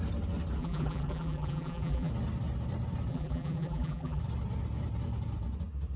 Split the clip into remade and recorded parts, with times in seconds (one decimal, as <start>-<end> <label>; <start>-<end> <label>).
0.0-0.6 recorded; 0.6-2.1 remade; 2.1-3.1 recorded; 3.1-4.2 remade; 4.2-6.0 recorded